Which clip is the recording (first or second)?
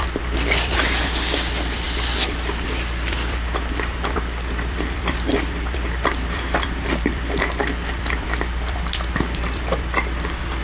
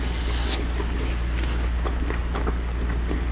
second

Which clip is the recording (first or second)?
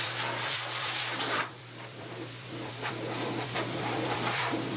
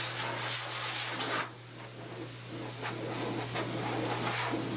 second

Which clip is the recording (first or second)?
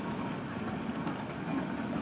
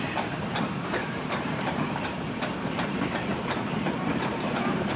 first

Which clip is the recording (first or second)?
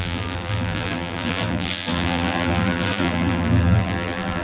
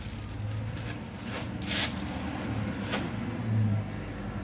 second